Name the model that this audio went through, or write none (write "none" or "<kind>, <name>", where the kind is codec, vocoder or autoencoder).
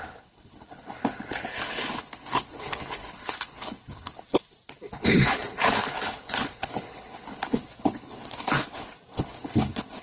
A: codec, HILCodec